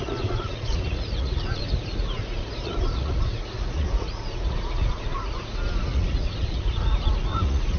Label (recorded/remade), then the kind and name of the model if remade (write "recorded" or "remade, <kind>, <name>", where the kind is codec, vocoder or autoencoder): remade, vocoder, Vocos